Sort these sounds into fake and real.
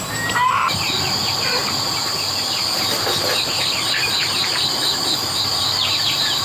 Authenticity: fake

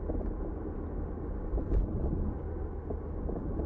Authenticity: real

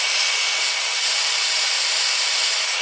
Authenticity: fake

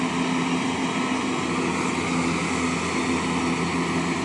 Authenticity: real